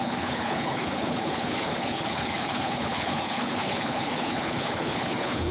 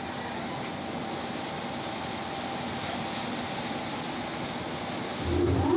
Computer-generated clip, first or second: first